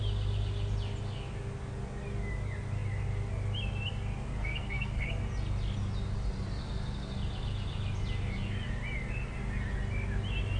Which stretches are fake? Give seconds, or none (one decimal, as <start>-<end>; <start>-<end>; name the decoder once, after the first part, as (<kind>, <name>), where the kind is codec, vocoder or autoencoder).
4.4-5.1 (codec, SNAC)